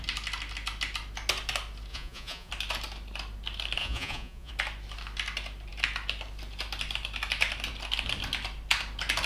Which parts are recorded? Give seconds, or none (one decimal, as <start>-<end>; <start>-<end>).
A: 0.0-1.9; 2.5-3.8; 4.5-9.3